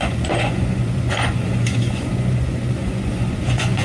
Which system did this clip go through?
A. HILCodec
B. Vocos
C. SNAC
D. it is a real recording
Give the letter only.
B